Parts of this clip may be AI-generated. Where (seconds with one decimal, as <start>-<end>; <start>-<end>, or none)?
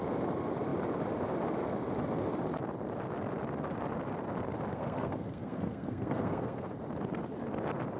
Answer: 4.7-6.7